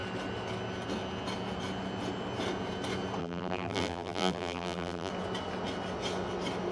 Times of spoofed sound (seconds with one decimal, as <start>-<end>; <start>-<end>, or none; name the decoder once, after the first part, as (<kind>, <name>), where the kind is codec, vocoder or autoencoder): 3.2-5.1 (vocoder, BigVGAN v2)